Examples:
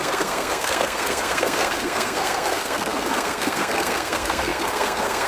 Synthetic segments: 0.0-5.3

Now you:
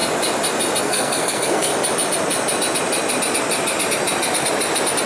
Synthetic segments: 0.8-1.7

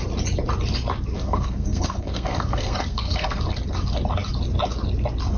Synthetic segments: 1.1-3.4

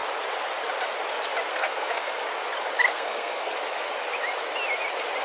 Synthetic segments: 1.5-2.2; 2.9-3.5

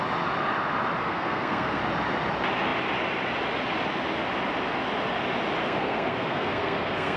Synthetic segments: 1.0-1.8; 5.6-7.2